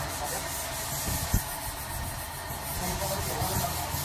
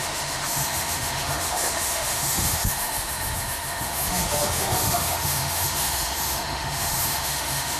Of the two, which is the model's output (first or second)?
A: second